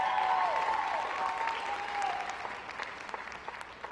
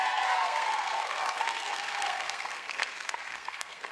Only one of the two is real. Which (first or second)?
first